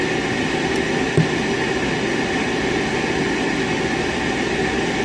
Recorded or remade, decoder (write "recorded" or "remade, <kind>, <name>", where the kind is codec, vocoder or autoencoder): recorded